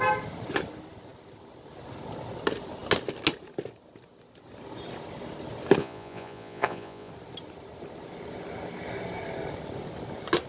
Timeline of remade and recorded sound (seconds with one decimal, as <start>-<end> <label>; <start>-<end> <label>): 0.0-5.8 recorded; 5.8-7.1 remade; 7.1-10.5 recorded